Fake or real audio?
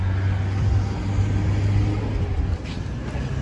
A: real